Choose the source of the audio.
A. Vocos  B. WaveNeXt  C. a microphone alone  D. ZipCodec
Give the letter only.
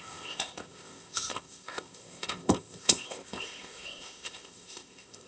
D